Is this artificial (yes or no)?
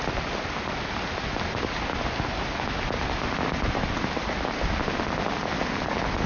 no